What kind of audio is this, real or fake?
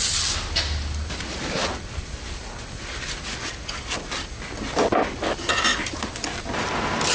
real